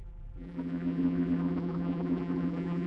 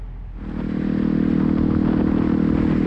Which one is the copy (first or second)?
first